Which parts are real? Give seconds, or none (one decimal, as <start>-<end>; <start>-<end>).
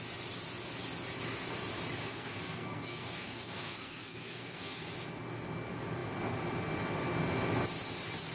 0.0-2.0; 4.9-8.3